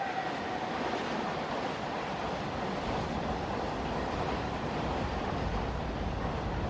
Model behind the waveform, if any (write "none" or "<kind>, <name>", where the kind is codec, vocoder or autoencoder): none